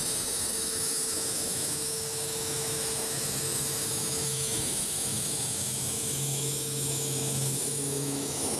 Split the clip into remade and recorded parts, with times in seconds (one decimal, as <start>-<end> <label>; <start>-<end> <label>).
0.0-8.6 remade